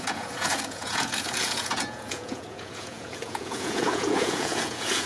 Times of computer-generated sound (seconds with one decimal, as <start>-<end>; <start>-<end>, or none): 0.0-5.1